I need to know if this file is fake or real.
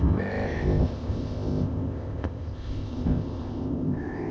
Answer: fake